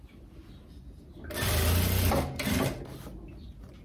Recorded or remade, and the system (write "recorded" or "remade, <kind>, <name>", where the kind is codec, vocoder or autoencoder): recorded